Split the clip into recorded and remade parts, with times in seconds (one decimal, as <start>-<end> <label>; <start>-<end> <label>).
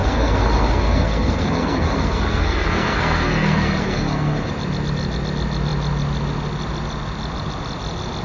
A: 0.0-4.5 remade; 4.5-8.2 recorded